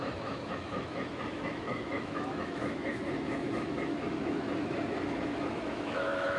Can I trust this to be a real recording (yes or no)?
no